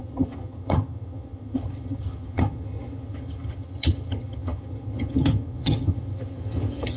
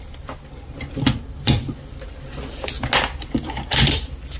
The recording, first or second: second